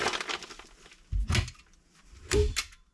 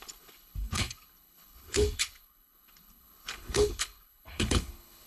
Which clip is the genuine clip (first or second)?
first